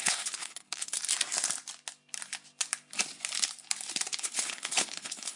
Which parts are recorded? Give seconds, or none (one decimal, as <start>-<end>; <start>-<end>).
1.0-4.2